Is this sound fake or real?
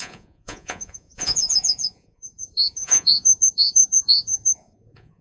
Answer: fake